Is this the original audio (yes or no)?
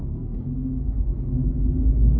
no